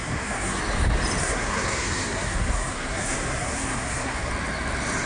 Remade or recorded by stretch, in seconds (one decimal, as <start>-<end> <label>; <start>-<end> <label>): 0.0-0.6 remade; 0.6-1.2 recorded; 1.2-4.3 remade; 4.3-5.1 recorded